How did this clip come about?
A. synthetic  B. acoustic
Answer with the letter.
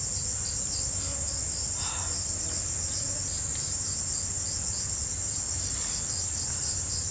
B